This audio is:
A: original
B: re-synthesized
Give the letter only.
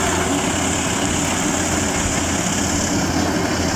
A